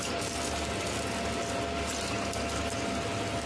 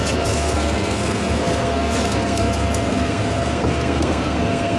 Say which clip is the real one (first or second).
first